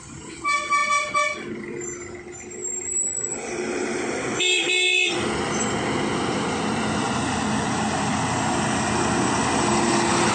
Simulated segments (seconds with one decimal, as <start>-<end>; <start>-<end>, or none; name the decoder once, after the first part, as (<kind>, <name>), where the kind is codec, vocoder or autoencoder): none